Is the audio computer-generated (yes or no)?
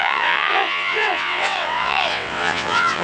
yes